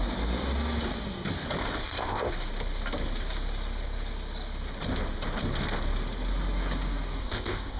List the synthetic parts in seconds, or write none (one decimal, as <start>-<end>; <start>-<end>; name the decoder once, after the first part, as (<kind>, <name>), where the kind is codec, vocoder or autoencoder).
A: 1.8-2.3 (codec, ZipCodec); 7.2-7.8